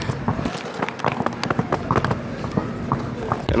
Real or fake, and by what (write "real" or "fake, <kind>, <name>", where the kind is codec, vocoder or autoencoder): real